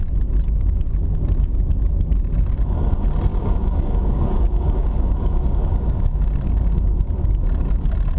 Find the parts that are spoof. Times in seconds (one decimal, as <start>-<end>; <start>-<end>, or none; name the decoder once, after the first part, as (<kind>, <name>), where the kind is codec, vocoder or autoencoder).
3.3-6.3 (codec, DAC)